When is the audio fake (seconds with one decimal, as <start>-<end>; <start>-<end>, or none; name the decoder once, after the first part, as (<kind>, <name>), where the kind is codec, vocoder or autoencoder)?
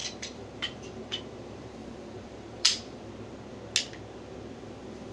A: 0.0-3.1 (vocoder, BigVGAN v2)